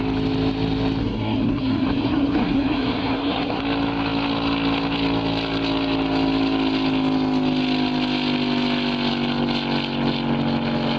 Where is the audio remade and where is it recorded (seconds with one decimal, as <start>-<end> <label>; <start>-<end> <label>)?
0.0-1.0 recorded; 1.0-3.6 remade; 3.6-11.0 recorded